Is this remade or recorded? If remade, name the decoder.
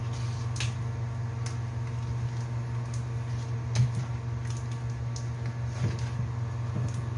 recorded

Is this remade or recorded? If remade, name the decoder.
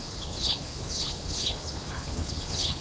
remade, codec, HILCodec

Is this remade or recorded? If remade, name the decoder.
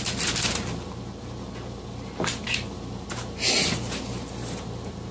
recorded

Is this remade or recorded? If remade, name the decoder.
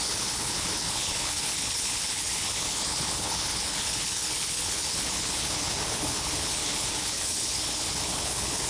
remade, codec, HILCodec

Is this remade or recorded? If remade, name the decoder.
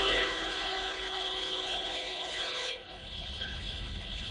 remade, codec, HILCodec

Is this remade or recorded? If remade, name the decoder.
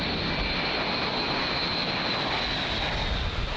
recorded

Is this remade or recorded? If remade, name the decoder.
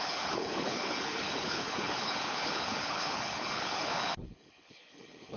remade, codec, HILCodec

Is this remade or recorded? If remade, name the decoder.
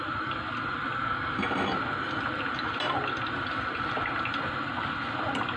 recorded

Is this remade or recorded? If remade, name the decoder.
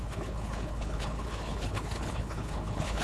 remade, codec, HILCodec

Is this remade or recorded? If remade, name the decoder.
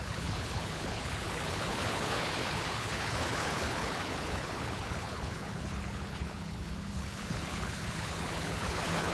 remade, codec, HILCodec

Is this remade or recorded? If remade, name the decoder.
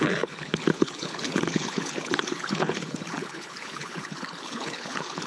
remade, codec, HILCodec